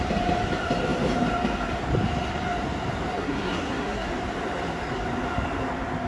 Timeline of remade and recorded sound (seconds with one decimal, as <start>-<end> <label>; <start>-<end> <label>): 0.0-3.1 recorded; 3.1-4.1 remade; 4.1-6.1 recorded